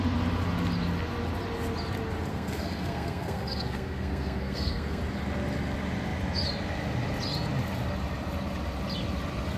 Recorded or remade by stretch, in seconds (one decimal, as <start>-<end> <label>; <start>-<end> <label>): 0.0-2.3 recorded; 2.3-5.0 remade; 5.0-9.6 recorded